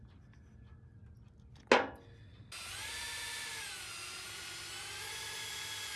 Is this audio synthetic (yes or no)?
no